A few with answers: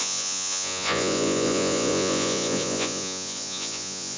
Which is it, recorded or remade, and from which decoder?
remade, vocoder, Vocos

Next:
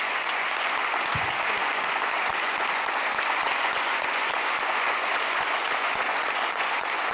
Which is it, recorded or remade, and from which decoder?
remade, vocoder, Vocos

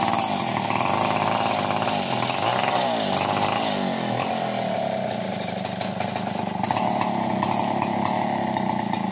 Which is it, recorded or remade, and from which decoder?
recorded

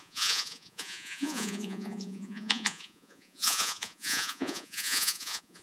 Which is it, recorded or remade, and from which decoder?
remade, vocoder, Vocos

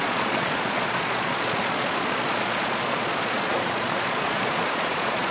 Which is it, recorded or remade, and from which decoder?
remade, vocoder, Vocos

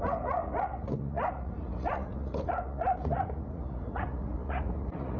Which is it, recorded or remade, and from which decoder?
remade, vocoder, Vocos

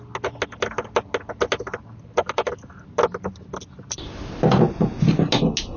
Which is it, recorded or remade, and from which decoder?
recorded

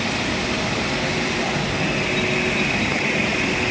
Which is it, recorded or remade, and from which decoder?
recorded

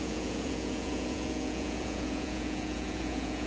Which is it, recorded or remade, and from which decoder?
remade, vocoder, Vocos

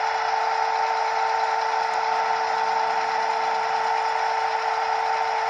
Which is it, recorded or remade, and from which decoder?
recorded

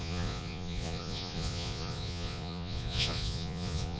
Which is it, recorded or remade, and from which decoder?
remade, vocoder, Vocos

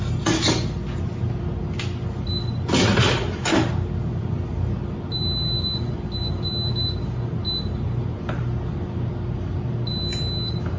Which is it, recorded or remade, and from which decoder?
recorded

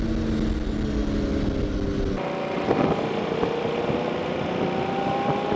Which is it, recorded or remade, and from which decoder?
recorded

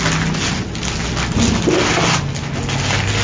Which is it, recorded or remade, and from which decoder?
recorded